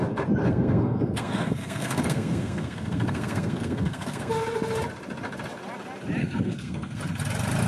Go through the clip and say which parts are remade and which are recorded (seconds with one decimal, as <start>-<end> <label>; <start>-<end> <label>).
0.0-0.4 recorded; 0.4-4.3 remade; 4.3-6.2 recorded; 6.2-7.0 remade; 7.0-7.7 recorded